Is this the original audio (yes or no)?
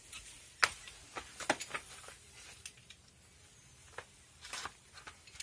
yes